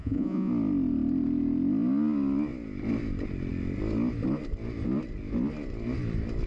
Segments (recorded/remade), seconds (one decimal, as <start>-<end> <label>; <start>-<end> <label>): 0.0-0.5 remade; 0.5-6.5 recorded